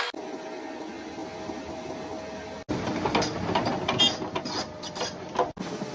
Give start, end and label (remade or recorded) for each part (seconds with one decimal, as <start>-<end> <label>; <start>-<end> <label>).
0.0-5.9 recorded